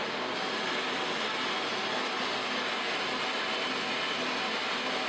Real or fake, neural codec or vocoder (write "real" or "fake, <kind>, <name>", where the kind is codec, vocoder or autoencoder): real